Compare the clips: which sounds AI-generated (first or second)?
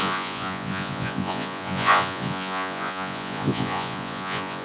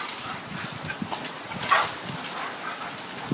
first